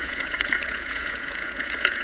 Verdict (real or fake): fake